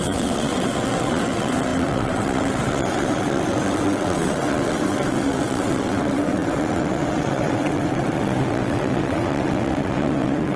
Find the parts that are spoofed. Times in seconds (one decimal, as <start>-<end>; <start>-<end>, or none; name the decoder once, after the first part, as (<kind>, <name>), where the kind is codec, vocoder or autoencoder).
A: 0.0-10.6 (vocoder, WaveNeXt)